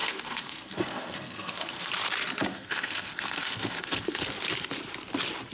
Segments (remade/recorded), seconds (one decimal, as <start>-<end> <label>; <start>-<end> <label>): 0.0-1.9 remade; 1.9-2.5 recorded; 2.5-4.2 remade; 4.2-5.5 recorded